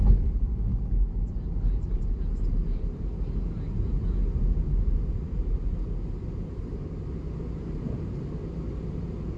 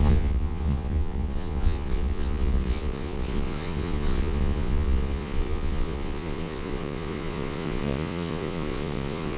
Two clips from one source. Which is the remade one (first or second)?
second